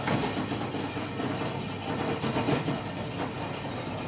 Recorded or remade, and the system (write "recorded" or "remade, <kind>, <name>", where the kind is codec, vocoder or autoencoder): recorded